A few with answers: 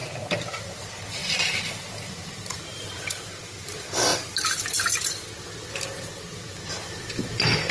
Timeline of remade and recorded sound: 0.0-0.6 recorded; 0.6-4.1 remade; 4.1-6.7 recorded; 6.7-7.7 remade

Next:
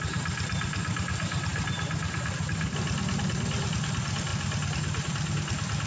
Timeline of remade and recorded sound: 0.0-5.9 recorded